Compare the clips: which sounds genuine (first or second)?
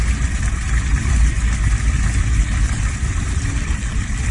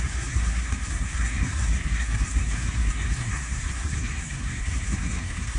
first